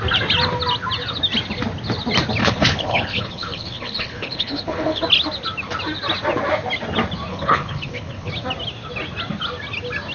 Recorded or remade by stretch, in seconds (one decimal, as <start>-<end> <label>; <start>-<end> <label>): 0.0-2.4 recorded; 2.4-5.0 remade; 5.0-7.3 recorded; 7.3-8.3 remade; 8.3-10.1 recorded